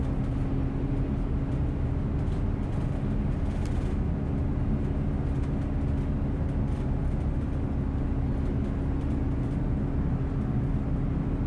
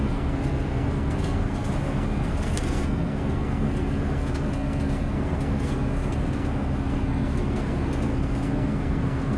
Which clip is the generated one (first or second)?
second